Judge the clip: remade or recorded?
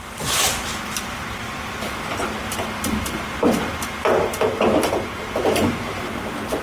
recorded